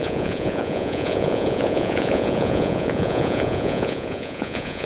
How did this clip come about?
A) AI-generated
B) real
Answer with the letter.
A